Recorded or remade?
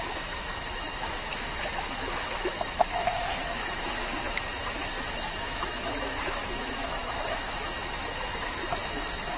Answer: remade